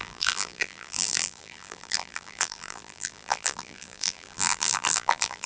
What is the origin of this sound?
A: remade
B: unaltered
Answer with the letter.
A